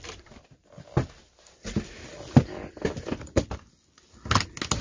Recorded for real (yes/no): yes